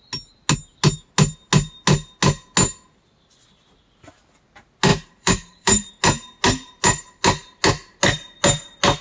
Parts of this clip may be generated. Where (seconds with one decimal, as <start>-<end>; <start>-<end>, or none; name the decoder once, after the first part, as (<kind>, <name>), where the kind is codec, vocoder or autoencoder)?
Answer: 4.9-5.9 (vocoder, BigVGAN v2)